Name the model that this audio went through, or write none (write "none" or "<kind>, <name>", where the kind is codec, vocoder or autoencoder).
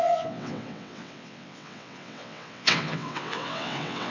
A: vocoder, WaveNeXt